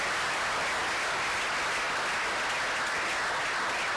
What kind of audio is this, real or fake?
real